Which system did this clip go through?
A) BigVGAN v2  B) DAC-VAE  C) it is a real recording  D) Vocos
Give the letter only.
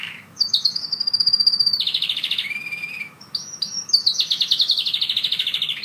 B